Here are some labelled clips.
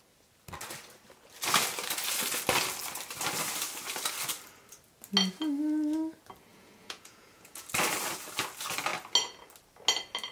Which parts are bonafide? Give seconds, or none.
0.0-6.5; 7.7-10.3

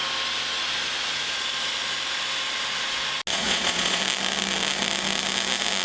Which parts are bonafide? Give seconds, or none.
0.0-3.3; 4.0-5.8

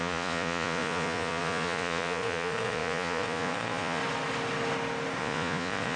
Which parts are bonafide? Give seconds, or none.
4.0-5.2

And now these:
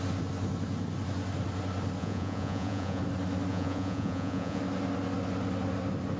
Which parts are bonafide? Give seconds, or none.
0.0-2.0; 3.0-3.5; 4.6-6.2

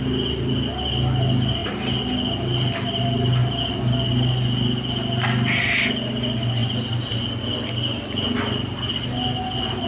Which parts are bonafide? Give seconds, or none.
0.0-9.9

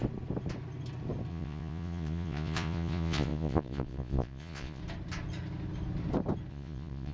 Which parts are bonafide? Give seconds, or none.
0.0-1.3; 4.8-6.5

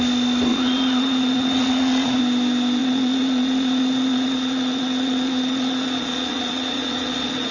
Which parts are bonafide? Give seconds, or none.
0.0-0.5; 2.2-2.8

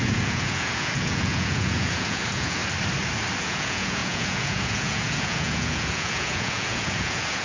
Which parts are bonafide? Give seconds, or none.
2.6-3.4